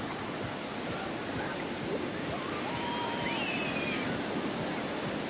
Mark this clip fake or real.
real